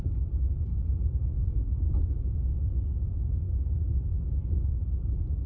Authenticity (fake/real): real